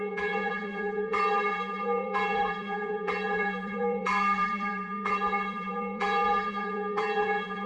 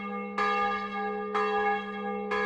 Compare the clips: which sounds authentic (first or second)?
second